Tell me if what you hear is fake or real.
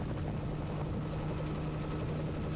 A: real